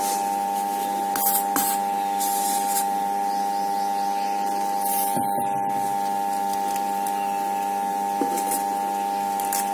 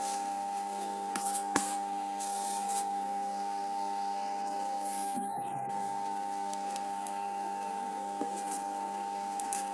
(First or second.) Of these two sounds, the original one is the first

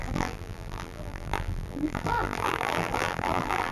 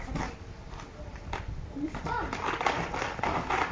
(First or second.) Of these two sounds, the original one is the second